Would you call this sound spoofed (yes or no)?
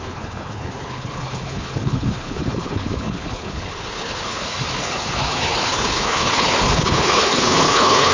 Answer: yes